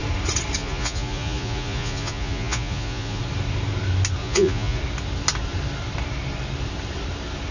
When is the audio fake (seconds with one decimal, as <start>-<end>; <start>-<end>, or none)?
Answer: 0.6-3.2; 4.2-4.8